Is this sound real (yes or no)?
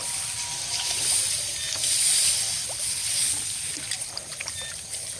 yes